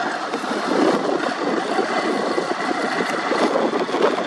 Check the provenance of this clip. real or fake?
real